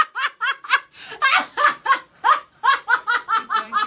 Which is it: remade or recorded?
remade